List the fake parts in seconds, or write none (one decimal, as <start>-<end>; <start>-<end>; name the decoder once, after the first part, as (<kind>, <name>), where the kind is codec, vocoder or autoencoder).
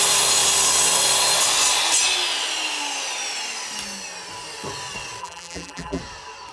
5.2-6.0 (vocoder, BigVGAN v2)